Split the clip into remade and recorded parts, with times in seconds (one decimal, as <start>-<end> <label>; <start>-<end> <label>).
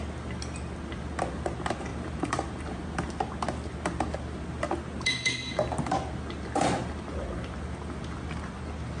0.0-1.9 recorded; 1.9-2.8 remade; 2.8-9.0 recorded